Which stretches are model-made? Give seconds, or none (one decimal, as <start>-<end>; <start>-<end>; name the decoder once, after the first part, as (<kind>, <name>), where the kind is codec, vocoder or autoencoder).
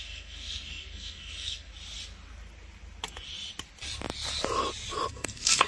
0.0-1.7 (codec, SNAC); 5.1-5.7